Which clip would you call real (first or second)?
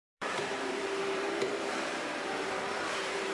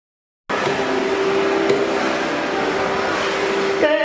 second